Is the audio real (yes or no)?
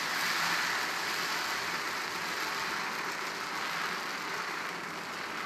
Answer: yes